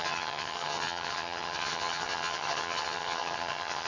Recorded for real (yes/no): no